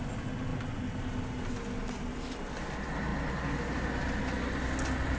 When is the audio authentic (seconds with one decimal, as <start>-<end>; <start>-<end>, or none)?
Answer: 0.0-5.2